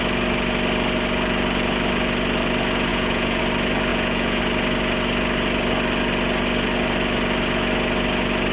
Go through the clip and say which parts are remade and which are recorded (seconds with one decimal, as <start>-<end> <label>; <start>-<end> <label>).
0.0-2.9 recorded; 2.9-3.4 remade; 3.4-3.9 recorded; 3.9-4.4 remade; 4.4-8.5 recorded

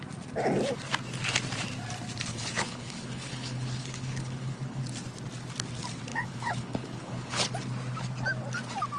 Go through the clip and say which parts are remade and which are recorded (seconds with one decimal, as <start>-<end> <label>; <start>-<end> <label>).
0.0-2.3 recorded; 2.3-4.8 remade; 4.8-6.1 recorded; 6.1-7.5 remade; 7.5-9.0 recorded